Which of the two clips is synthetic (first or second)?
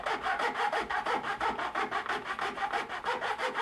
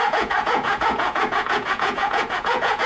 second